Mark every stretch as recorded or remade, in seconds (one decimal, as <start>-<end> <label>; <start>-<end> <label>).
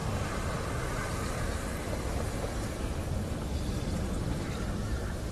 0.0-1.5 recorded; 1.5-3.0 remade; 3.0-3.7 recorded; 3.7-5.3 remade